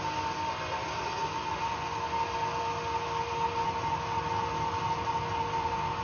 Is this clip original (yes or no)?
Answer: yes